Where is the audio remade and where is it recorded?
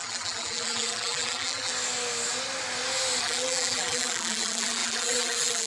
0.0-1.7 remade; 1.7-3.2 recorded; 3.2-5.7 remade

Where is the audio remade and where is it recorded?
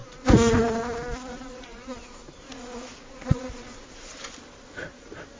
0.0-0.6 remade; 0.6-1.3 recorded; 1.3-4.3 remade; 4.3-5.4 recorded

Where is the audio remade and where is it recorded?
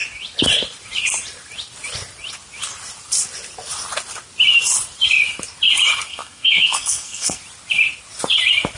0.0-6.1 recorded; 6.1-7.4 remade; 7.4-8.8 recorded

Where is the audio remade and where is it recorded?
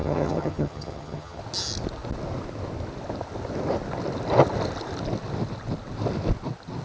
0.0-1.4 remade; 1.4-6.8 recorded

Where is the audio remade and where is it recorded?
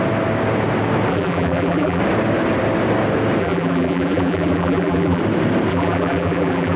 0.0-1.1 recorded; 1.1-2.0 remade; 2.0-3.4 recorded; 3.4-5.2 remade; 5.2-5.7 recorded; 5.7-6.8 remade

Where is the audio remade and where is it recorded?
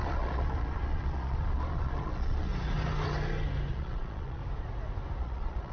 0.0-2.5 remade; 2.5-3.7 recorded; 3.7-4.4 remade; 4.4-5.2 recorded; 5.2-5.7 remade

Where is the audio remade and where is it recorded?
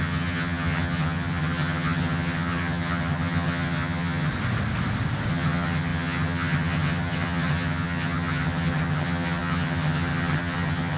0.0-4.3 remade; 4.3-5.3 recorded; 5.3-11.0 remade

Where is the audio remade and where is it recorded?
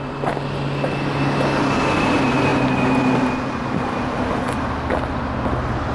0.0-5.9 recorded